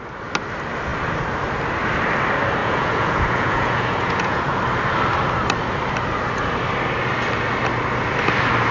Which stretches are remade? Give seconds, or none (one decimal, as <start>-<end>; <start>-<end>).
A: 2.6-4.6